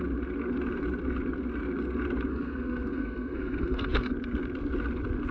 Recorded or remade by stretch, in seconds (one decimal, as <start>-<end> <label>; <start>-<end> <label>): 0.0-2.3 recorded; 2.3-4.1 remade; 4.1-5.3 recorded